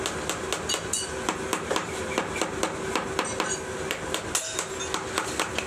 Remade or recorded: recorded